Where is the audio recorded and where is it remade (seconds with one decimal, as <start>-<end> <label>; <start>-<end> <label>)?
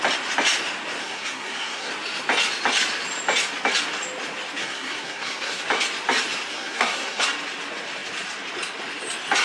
0.0-1.0 recorded; 1.0-1.9 remade; 1.9-4.6 recorded; 4.6-5.6 remade; 5.6-6.5 recorded; 6.5-7.2 remade; 7.2-9.4 recorded